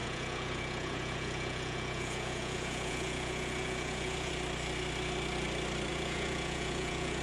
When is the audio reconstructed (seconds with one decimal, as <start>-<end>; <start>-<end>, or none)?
0.0-4.3; 5.9-7.2